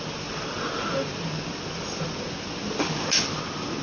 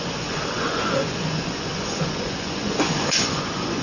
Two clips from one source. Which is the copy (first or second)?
second